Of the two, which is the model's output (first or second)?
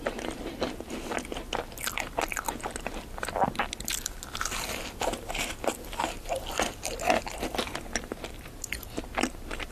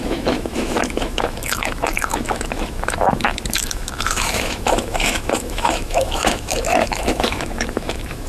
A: second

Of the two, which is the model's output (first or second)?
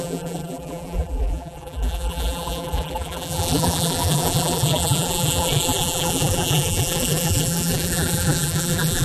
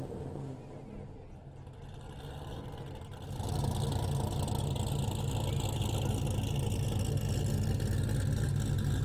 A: first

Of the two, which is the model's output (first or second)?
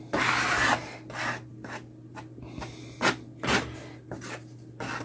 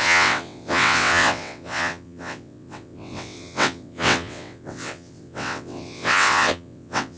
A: second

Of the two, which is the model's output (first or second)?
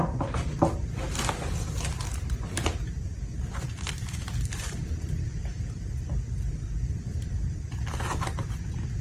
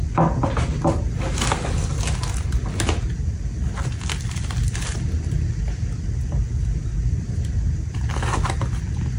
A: first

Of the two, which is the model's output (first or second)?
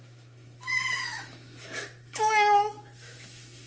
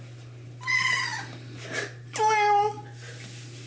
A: first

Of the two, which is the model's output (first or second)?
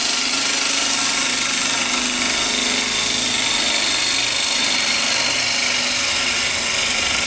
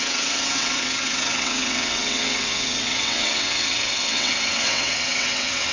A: second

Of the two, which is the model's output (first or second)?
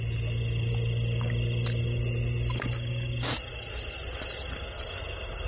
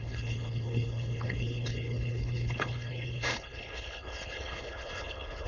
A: second